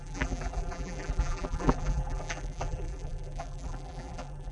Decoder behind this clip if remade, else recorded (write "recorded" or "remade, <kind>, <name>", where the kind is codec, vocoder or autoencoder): remade, vocoder, BigVGAN v2